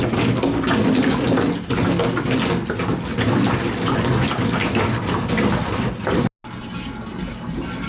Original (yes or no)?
yes